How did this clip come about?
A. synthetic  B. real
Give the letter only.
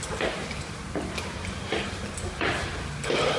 B